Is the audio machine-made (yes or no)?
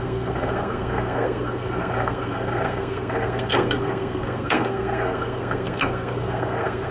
yes